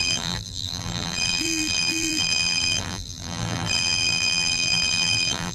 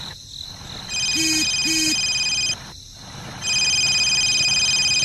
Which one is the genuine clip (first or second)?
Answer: second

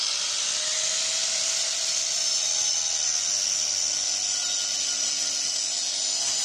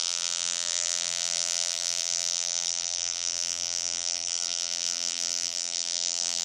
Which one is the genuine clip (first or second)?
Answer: first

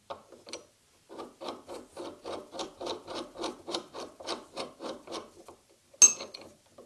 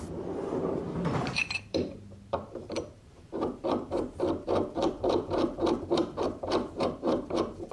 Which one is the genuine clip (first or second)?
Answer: first